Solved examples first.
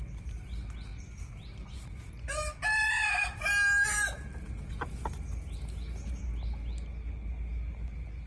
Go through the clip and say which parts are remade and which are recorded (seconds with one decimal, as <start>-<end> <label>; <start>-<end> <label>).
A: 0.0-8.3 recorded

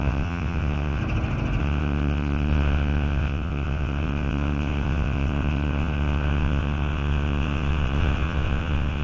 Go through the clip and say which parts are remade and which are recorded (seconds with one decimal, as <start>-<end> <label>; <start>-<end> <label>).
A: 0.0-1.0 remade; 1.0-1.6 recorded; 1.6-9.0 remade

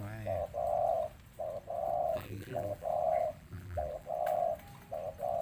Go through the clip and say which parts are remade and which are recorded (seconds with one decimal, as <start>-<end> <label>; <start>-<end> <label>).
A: 0.0-2.0 recorded; 2.0-4.4 remade; 4.4-5.4 recorded